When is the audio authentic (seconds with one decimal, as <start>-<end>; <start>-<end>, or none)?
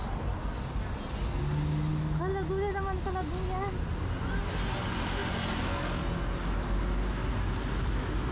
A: 0.0-5.2; 5.7-8.3